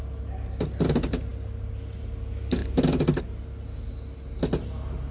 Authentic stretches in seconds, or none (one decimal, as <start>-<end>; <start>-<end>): 0.0-5.1